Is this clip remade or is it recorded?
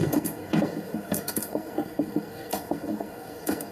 remade